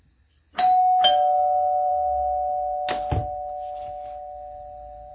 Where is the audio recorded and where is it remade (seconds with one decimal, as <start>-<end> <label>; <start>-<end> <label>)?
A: 0.0-5.1 recorded